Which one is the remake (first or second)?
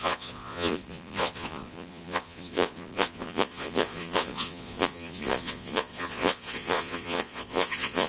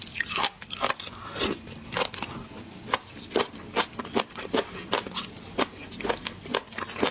first